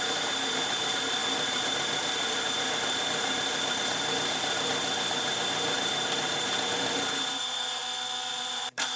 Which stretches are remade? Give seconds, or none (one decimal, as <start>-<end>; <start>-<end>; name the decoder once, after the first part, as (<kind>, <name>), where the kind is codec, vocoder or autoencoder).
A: 0.0-7.8 (vocoder, BigVGAN v2); 8.3-9.0